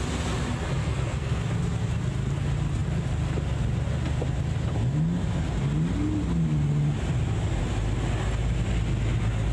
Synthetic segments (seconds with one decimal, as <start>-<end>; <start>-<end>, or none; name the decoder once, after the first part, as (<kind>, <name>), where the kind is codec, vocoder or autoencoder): 0.8-1.5 (codec, SNAC)